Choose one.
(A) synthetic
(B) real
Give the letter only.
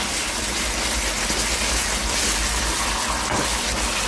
B